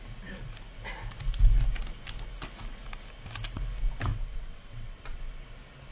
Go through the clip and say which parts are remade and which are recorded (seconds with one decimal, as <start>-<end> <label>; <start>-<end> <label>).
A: 0.0-4.1 recorded; 4.1-5.2 remade; 5.2-5.9 recorded